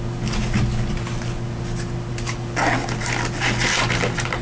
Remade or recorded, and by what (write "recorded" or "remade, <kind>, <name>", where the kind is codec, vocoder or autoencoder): recorded